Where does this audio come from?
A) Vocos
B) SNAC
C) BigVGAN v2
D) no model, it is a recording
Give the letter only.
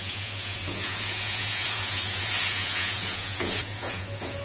A